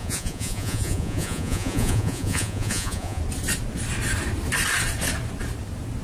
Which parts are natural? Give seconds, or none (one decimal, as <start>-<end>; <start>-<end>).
3.2-6.0